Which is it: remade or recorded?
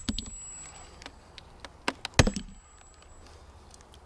recorded